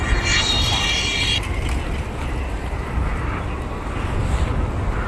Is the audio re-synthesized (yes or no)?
no